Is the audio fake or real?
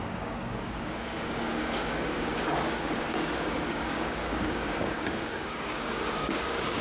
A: fake